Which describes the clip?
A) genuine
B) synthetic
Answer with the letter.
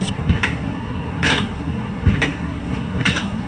B